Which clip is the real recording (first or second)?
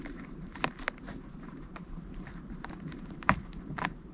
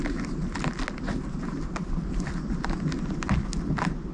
second